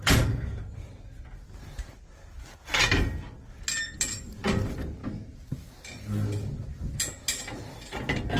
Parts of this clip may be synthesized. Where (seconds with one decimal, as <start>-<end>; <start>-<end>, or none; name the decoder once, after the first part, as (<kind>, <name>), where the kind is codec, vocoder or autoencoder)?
none